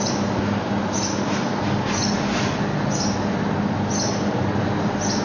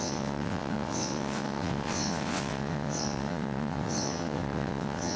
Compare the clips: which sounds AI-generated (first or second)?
second